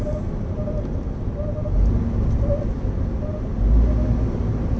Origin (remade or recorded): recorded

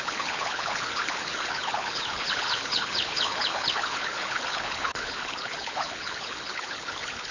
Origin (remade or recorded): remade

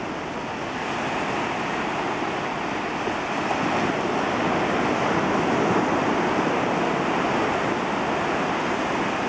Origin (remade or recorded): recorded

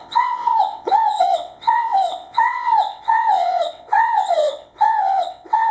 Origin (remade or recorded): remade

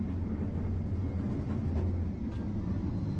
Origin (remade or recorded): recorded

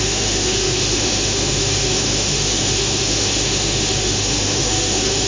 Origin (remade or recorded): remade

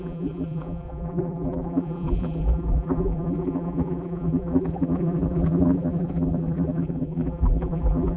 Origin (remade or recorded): remade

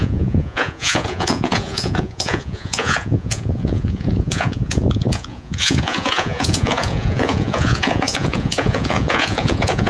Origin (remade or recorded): remade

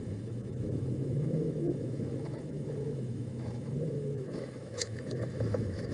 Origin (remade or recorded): remade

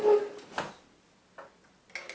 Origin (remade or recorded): recorded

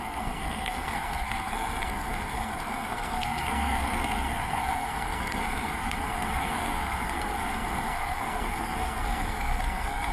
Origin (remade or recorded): remade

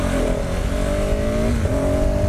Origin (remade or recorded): recorded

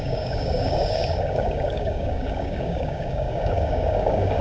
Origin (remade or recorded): remade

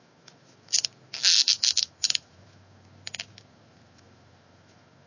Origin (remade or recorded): remade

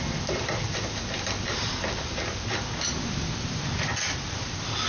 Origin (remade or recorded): recorded